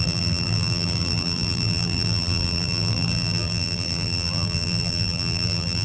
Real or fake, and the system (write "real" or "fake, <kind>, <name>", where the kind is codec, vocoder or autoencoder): fake, vocoder, BigVGAN v2